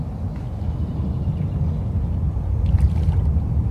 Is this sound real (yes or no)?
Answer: yes